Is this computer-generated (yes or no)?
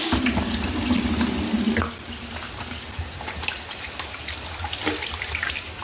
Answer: no